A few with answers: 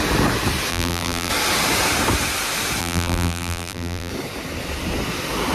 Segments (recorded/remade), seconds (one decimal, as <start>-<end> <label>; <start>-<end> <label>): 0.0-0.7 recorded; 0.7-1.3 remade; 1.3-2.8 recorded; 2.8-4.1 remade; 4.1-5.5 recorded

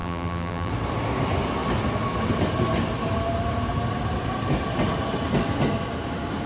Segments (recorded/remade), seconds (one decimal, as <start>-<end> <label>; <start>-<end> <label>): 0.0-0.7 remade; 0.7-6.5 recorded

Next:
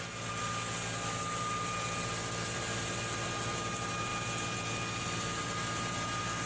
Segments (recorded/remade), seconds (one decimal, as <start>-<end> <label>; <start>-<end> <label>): 0.0-6.5 recorded

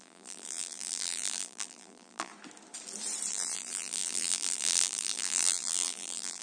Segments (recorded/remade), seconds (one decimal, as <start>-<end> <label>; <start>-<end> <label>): 0.0-2.3 remade; 2.3-3.3 recorded; 3.3-6.4 remade

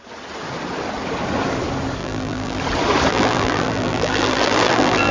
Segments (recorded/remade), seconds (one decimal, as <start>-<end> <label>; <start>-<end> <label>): 0.0-2.0 recorded; 2.0-2.6 remade; 2.6-3.1 recorded; 3.1-5.1 remade

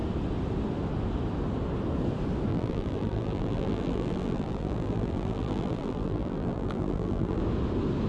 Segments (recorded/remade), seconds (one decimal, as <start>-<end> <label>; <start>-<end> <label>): 0.0-2.5 recorded; 2.5-7.4 remade; 7.4-8.1 recorded